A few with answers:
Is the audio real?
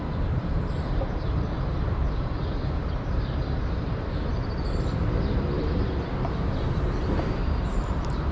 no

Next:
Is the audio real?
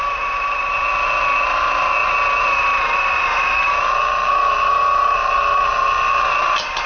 yes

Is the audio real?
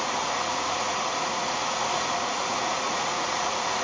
no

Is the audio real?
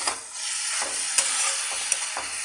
yes